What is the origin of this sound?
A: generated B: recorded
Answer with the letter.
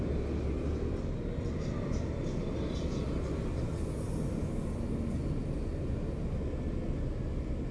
B